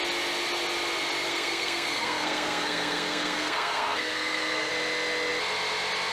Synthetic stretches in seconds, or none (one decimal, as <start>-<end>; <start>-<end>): 1.3-4.7